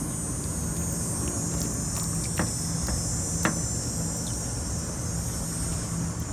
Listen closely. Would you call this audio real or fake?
real